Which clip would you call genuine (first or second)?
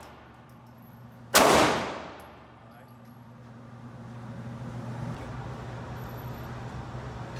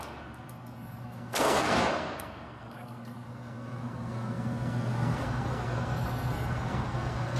first